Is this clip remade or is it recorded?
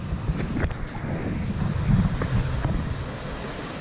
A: recorded